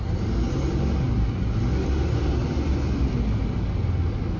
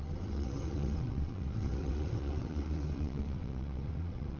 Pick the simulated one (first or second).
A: second